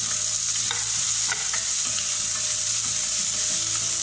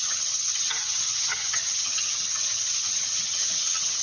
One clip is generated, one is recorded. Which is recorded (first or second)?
first